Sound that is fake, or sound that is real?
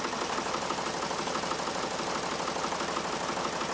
real